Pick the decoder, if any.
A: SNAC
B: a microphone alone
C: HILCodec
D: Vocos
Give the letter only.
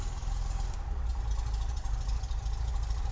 B